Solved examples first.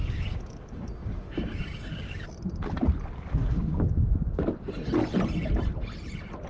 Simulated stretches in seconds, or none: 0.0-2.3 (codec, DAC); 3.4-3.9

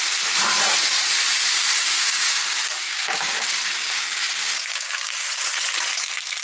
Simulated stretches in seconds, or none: 1.5-5.3 (codec, DAC)

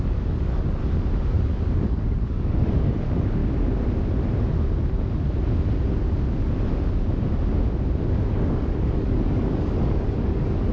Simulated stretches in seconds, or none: 0.0-0.8 (codec, DAC); 1.3-3.4; 8.3-10.7